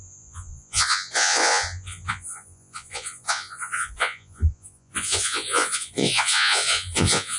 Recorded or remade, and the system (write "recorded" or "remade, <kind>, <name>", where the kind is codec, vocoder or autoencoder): remade, vocoder, Vocos